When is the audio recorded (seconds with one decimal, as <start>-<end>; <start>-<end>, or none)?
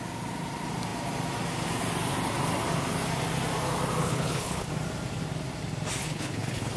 0.0-4.0; 4.7-6.0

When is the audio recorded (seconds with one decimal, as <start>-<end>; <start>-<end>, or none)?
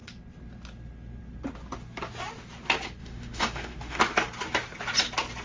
0.0-3.0; 4.0-5.4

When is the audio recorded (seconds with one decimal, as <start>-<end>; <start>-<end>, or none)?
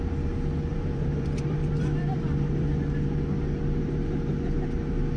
0.0-0.7; 3.0-5.2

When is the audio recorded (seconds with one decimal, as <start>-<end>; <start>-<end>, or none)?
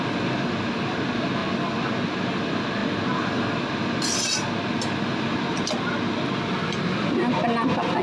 0.0-8.0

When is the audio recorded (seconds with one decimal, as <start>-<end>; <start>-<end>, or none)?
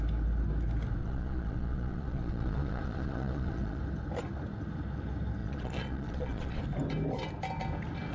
0.0-1.0; 3.8-5.4; 6.6-8.1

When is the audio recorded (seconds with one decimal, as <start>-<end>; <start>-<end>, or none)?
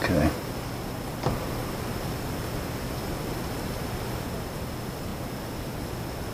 0.0-6.3